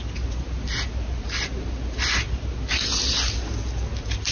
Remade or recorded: recorded